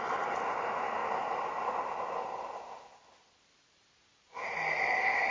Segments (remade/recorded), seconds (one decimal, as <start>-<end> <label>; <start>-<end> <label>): 0.0-5.3 recorded